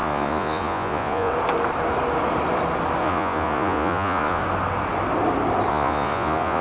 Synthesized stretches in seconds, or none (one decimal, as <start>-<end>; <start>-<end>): 0.0-1.3; 3.0-4.4; 5.7-6.6